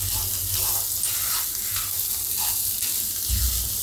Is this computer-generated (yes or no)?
no